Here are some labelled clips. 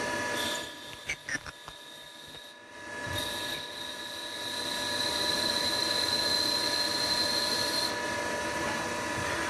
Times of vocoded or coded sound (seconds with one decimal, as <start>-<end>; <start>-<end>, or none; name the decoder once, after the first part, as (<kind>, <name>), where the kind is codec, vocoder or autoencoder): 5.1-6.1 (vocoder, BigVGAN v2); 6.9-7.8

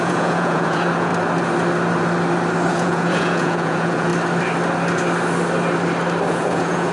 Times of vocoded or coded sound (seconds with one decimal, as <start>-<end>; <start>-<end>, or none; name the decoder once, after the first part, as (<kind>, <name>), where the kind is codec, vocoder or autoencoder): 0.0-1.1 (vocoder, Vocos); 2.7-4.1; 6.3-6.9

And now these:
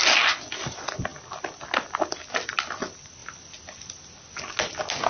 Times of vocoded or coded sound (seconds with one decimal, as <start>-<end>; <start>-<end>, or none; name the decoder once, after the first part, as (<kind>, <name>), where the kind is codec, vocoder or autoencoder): none

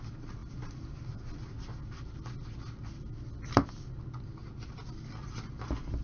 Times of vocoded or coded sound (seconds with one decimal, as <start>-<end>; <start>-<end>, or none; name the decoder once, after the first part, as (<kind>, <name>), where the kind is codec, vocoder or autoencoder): none

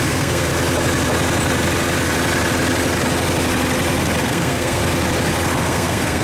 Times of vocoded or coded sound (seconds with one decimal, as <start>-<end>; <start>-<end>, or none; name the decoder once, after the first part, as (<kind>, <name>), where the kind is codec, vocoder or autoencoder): 0.0-0.5 (codec, SNAC); 4.2-4.8; 5.6-6.2

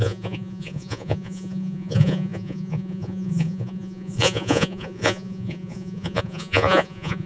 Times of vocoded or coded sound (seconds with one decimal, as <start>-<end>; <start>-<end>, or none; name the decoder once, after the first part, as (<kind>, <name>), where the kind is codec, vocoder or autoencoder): 0.0-7.3 (vocoder, Vocos)

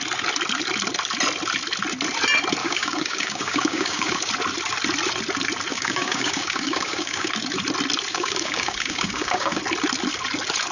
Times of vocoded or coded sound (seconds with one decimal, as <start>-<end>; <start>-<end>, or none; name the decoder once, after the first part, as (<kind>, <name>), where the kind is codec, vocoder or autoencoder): 2.6-4.3 (codec, DAC); 5.7-7.3; 8.1-9.6